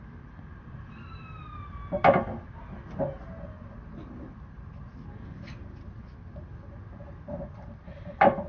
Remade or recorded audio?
recorded